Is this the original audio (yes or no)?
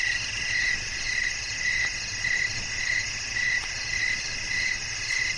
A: yes